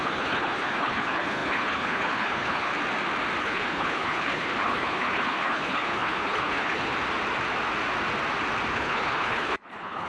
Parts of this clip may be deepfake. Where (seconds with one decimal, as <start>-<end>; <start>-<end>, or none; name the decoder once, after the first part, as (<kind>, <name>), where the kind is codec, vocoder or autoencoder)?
0.0-2.7 (codec, HILCodec); 3.4-6.9; 8.7-10.1